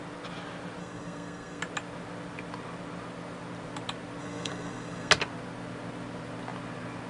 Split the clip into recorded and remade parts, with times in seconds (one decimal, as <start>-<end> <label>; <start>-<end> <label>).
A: 0.0-0.8 recorded; 0.8-1.6 remade; 1.6-4.2 recorded; 4.2-5.1 remade; 5.1-7.1 recorded